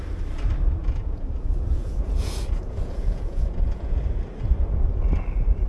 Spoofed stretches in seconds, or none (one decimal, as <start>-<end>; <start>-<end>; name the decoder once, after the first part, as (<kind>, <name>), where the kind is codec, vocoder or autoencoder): 0.8-4.0 (vocoder, Vocos)